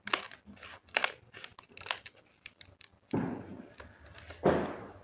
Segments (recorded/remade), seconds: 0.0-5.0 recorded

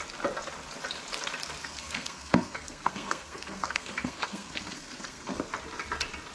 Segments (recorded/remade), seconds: 0.0-1.6 recorded; 1.6-5.4 remade; 5.4-6.3 recorded

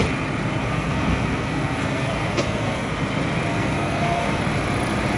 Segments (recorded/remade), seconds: 0.0-0.6 recorded; 0.6-2.9 remade; 2.9-3.5 recorded; 3.5-4.4 remade; 4.4-5.2 recorded

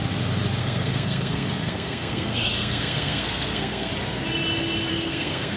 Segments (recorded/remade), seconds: 0.0-0.6 recorded; 0.6-3.9 remade; 3.9-4.9 recorded; 4.9-5.6 remade